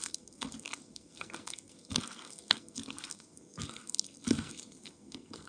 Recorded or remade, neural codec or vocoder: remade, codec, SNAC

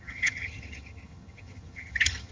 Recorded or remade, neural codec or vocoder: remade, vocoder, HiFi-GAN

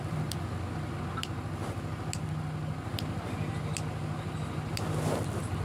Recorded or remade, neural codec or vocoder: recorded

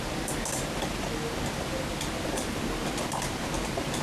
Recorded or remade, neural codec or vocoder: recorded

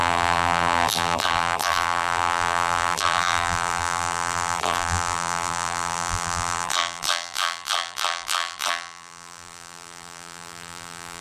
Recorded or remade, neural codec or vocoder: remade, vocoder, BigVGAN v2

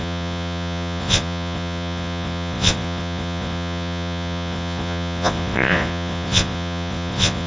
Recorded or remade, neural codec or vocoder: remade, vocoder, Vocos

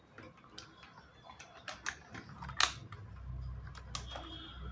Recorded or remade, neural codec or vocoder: recorded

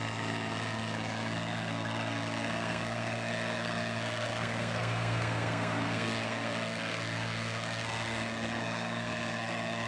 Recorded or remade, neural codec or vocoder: remade, codec, SNAC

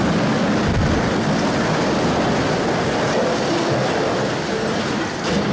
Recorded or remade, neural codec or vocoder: recorded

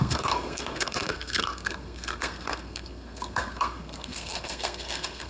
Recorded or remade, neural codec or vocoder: remade, codec, SNAC